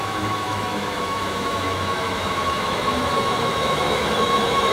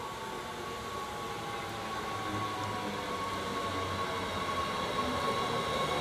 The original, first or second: second